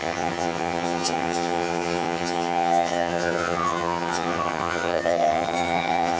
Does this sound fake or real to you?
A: fake